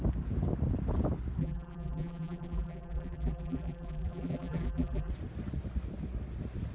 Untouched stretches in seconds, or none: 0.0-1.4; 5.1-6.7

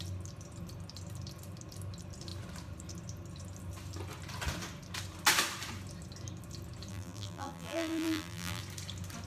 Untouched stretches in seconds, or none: 0.0-6.9; 8.6-9.3